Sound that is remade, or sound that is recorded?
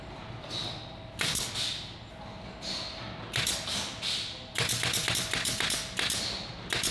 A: recorded